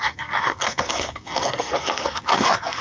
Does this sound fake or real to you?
fake